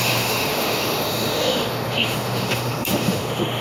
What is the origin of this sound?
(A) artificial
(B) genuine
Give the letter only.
A